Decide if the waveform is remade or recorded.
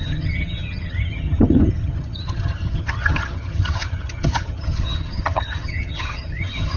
remade